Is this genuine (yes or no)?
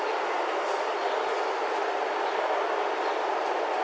yes